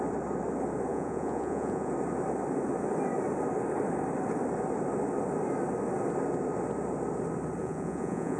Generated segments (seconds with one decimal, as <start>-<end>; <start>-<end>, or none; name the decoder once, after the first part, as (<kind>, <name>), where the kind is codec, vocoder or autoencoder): 0.9-1.9 (vocoder, Vocos); 7.6-8.4